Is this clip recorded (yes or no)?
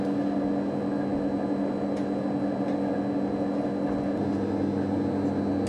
yes